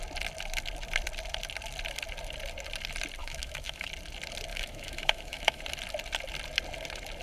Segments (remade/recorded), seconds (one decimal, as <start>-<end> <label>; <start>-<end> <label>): 0.0-3.2 recorded; 3.2-3.9 remade; 3.9-4.5 recorded; 4.5-5.6 remade; 5.6-7.2 recorded